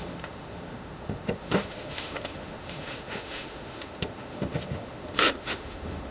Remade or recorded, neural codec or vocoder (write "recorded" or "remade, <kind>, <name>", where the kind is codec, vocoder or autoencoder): remade, autoencoder, DAC-VAE